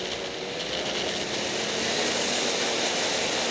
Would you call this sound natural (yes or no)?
yes